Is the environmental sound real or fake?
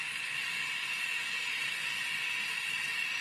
real